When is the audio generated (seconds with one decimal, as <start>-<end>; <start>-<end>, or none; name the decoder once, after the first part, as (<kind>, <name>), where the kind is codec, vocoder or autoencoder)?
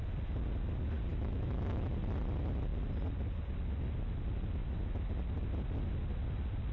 1.1-1.9 (autoencoder, DAC-VAE); 4.6-5.1